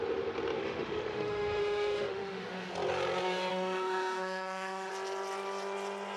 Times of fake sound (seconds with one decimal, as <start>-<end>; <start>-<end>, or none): 0.6-2.7; 3.5-4.9